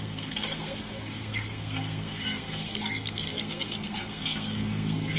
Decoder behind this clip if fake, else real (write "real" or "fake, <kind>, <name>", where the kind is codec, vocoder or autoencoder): fake, codec, SNAC